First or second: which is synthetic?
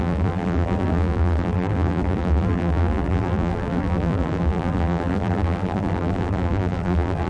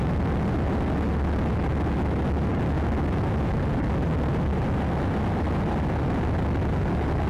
first